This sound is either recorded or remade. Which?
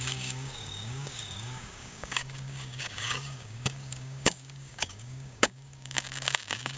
remade